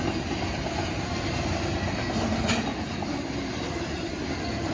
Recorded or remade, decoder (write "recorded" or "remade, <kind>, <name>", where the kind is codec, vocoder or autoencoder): recorded